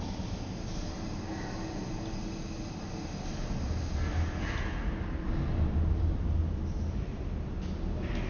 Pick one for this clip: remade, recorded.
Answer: recorded